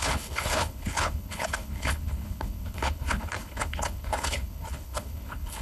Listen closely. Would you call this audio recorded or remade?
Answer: remade